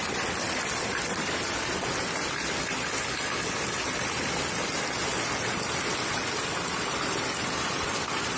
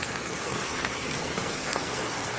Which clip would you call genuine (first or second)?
first